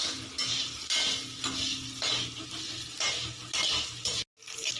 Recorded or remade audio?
recorded